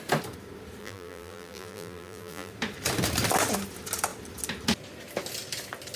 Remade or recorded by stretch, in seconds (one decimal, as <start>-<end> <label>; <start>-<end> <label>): 0.0-0.8 recorded; 0.8-2.5 remade; 2.5-6.0 recorded